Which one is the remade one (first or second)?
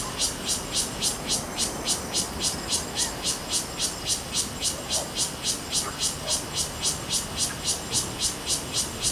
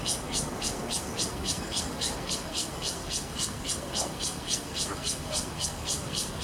second